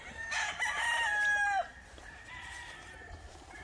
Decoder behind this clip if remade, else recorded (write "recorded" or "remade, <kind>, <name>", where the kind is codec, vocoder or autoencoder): recorded